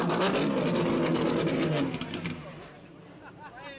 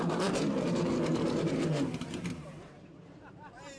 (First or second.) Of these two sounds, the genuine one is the first